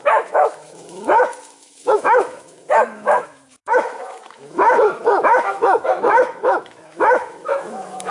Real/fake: fake